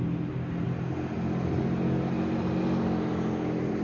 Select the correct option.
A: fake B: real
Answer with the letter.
B